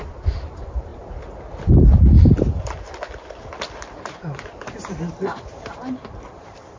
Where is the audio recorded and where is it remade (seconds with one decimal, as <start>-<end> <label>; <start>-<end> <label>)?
0.0-0.9 remade; 0.9-3.9 recorded; 3.9-6.8 remade